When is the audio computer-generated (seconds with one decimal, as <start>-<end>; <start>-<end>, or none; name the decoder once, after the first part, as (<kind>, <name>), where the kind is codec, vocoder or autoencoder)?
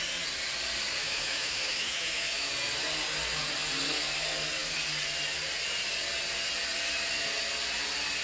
1.0-2.5 (autoencoder, DAC-VAE)